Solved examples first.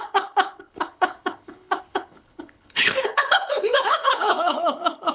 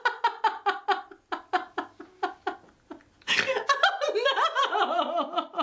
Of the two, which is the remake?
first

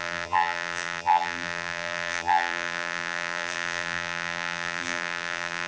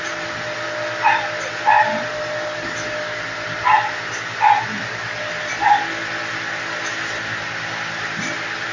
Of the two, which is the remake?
first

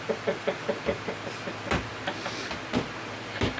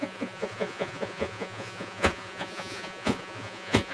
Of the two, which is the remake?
second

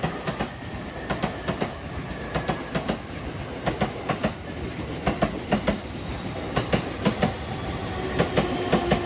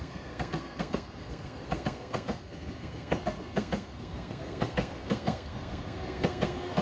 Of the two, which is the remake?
second